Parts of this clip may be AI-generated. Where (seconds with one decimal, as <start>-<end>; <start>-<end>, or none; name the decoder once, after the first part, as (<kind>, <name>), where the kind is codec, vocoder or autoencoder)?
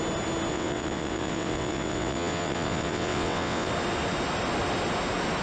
0.5-3.7 (vocoder, WaveNeXt)